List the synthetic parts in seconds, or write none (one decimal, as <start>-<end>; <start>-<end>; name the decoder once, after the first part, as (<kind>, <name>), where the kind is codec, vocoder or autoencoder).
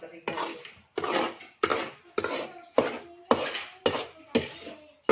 none